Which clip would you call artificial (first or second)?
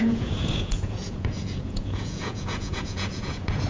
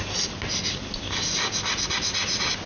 first